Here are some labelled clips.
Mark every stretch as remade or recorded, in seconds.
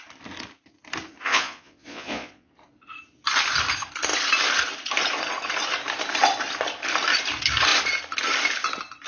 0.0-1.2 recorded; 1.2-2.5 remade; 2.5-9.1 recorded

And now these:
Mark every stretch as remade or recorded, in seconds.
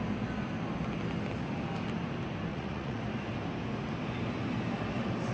0.0-2.5 recorded; 2.5-3.0 remade; 3.0-5.3 recorded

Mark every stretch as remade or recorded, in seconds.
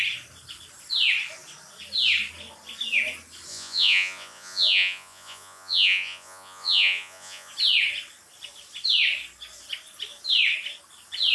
0.0-3.5 recorded; 3.5-7.5 remade; 7.5-11.3 recorded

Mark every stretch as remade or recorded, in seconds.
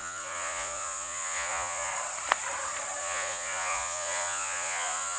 0.0-1.9 remade; 1.9-3.0 recorded; 3.0-5.2 remade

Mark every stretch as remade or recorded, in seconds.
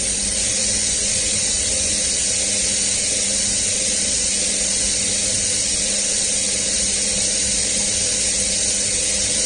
0.0-0.6 recorded; 0.6-2.0 remade; 2.0-9.5 recorded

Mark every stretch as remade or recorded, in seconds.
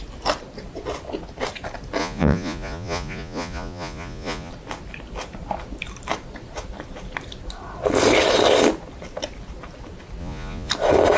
0.0-2.0 recorded; 2.0-4.5 remade; 4.5-10.2 recorded; 10.2-10.7 remade; 10.7-11.2 recorded